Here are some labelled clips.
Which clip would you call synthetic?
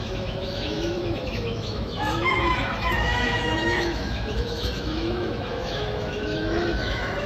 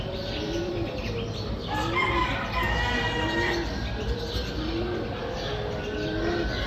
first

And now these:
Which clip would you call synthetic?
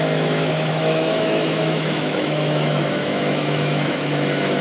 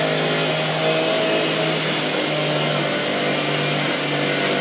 first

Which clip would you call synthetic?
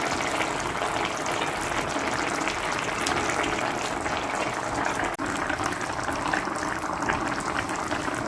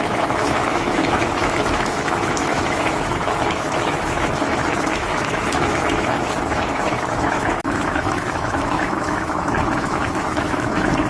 second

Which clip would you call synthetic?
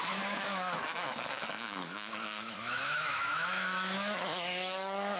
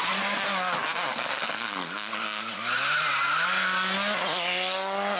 first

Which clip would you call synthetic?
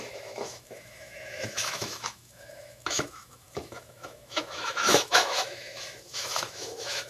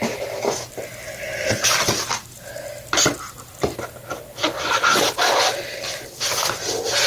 first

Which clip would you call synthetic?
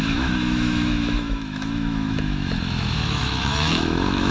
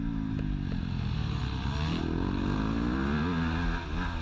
first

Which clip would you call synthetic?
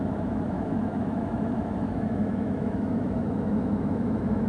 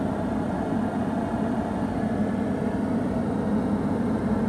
first